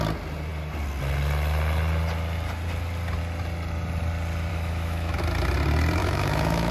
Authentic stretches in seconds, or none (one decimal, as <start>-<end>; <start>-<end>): 0.0-4.5; 5.2-6.0